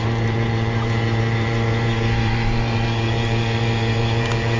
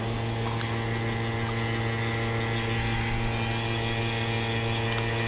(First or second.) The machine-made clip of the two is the first